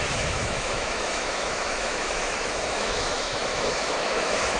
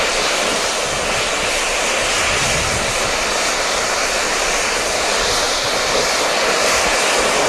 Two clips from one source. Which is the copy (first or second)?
first